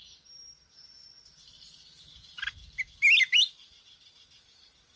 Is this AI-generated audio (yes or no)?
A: no